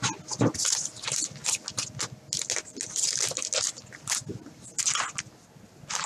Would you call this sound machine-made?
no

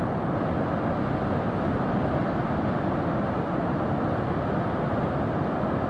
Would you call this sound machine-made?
no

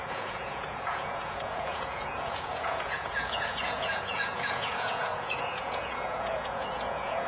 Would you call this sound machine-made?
yes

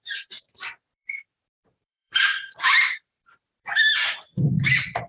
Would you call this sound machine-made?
yes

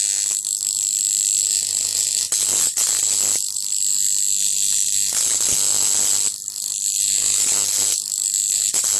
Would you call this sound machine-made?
no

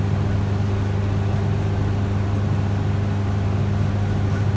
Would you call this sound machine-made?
no